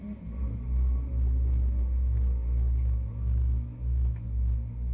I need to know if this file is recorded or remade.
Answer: recorded